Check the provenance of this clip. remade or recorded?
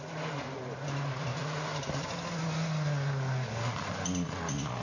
recorded